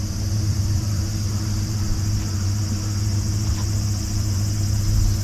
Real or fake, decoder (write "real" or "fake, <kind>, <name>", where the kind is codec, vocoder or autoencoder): fake, vocoder, BigVGAN v2